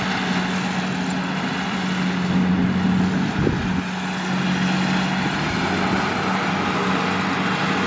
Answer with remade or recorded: recorded